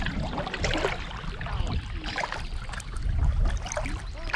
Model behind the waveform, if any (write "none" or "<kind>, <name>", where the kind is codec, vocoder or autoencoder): none